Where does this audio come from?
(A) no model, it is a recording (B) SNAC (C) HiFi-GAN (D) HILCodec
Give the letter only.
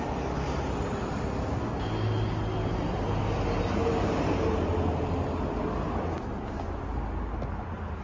A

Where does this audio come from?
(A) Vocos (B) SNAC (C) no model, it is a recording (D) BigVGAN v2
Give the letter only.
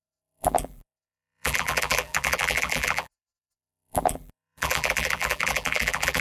D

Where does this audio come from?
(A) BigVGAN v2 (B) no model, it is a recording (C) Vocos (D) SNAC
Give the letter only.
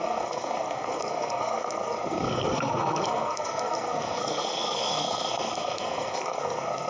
D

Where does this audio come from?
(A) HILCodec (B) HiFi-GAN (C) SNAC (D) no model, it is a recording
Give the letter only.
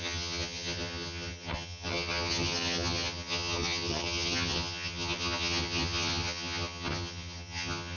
B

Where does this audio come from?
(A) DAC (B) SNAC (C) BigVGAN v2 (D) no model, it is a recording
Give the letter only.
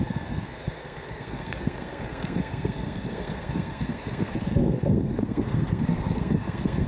B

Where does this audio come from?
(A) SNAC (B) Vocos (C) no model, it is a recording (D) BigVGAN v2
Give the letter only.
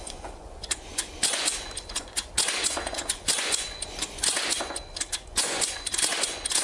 B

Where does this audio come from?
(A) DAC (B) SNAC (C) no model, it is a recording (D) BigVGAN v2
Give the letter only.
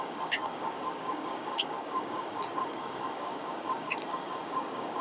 A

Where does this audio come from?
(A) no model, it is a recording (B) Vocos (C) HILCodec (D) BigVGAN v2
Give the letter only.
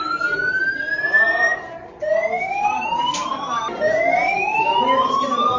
A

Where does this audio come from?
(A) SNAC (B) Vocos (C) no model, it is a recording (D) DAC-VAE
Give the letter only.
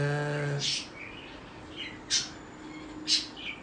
C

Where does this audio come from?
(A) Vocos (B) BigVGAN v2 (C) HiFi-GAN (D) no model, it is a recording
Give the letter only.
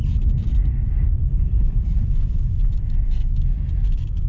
B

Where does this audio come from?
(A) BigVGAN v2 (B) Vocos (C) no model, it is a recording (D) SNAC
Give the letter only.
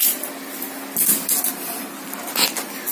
C